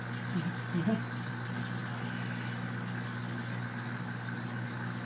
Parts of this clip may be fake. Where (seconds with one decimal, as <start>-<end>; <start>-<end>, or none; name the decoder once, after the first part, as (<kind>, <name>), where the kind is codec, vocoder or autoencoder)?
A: none